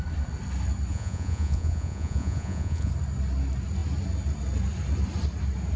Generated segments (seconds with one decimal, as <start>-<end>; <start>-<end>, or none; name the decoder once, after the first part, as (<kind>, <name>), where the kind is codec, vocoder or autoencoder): 0.9-2.9 (vocoder, Vocos)